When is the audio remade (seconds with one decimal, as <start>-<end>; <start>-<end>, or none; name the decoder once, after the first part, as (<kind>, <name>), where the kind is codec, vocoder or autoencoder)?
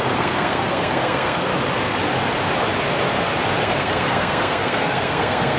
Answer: 0.0-1.5 (codec, SNAC); 3.6-5.6